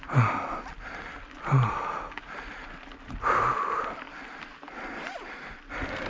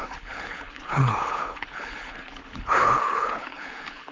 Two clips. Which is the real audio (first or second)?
first